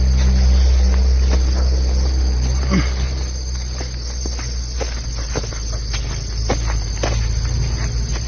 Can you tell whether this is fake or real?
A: real